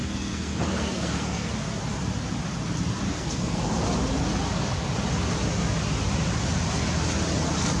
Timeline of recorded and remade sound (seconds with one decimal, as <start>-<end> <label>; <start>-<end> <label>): 0.0-1.5 remade; 1.5-3.1 recorded; 3.1-3.7 remade; 3.7-7.8 recorded